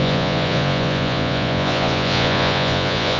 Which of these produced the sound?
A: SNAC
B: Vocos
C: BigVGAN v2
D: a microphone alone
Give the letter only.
B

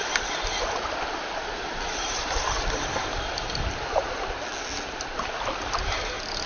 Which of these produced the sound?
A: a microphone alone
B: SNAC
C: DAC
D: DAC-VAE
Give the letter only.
A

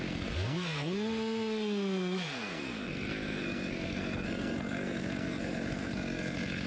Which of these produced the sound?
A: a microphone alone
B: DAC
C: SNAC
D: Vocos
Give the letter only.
C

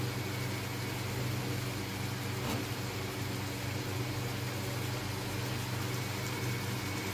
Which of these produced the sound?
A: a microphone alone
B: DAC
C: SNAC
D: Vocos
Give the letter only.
A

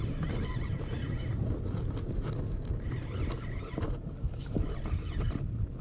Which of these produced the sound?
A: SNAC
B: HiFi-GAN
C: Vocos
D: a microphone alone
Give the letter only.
D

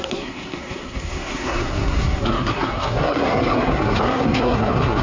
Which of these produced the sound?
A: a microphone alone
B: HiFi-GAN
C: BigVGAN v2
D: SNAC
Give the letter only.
D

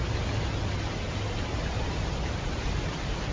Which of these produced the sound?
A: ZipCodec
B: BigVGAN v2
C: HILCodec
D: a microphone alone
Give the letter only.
D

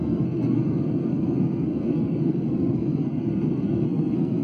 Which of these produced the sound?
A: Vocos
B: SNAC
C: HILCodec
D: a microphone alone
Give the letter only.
B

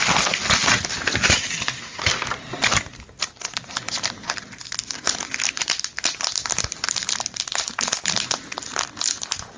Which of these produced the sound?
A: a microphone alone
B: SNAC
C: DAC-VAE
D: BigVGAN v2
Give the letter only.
A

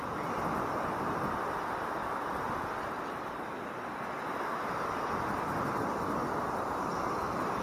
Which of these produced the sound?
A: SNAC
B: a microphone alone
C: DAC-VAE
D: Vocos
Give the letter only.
B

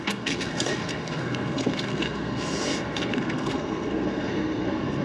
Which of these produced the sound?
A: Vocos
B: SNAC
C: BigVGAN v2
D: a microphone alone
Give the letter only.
B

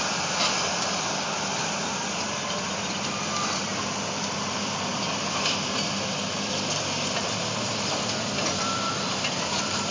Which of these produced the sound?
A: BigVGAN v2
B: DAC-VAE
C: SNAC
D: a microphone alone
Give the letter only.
A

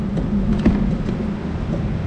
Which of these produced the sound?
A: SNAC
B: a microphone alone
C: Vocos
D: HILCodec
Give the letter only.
B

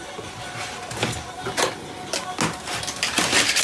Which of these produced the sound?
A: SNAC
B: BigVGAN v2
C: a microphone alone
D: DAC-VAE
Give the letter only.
C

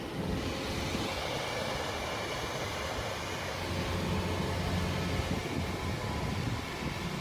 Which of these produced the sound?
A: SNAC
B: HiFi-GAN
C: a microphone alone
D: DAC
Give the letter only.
C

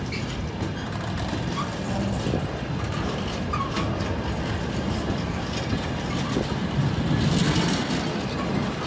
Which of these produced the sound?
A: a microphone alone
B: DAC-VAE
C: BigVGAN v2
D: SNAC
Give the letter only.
A